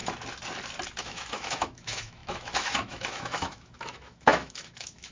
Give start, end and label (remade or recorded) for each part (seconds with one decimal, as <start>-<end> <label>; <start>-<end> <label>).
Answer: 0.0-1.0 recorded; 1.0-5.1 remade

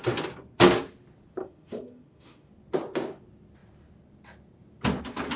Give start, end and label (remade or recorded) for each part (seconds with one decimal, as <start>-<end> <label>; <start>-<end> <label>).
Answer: 0.0-1.4 recorded; 1.4-2.5 remade; 2.5-5.4 recorded

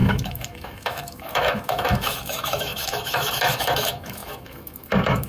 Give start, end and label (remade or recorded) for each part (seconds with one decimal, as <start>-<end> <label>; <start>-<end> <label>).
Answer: 0.0-5.3 remade

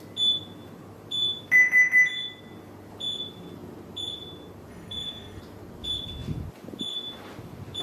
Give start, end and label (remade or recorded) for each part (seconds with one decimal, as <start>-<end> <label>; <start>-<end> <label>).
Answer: 0.0-4.7 recorded; 4.7-5.4 remade; 5.4-7.8 recorded

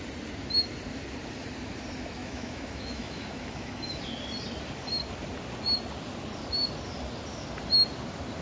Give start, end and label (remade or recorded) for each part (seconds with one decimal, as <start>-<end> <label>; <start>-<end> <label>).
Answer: 0.0-2.2 recorded; 2.2-4.0 remade; 4.0-8.4 recorded

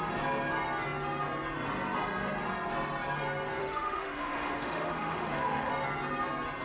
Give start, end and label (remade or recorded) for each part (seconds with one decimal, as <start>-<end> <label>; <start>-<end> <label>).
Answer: 0.0-3.6 recorded; 3.6-5.7 remade; 5.7-6.6 recorded